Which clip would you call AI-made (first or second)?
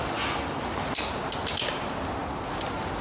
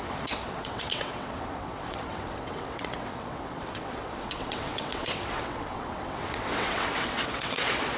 second